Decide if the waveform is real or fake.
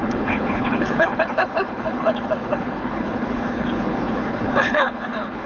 fake